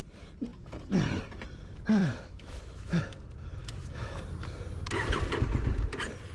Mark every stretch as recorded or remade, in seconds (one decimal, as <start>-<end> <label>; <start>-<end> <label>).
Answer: 0.0-0.5 recorded; 0.5-1.2 remade; 1.2-2.0 recorded; 2.0-3.0 remade; 3.0-3.6 recorded; 3.6-4.2 remade; 4.2-6.3 recorded